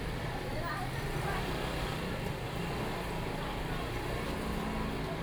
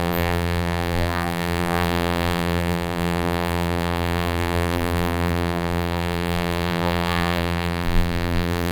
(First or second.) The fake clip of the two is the second